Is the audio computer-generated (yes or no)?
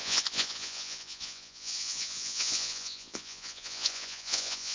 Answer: yes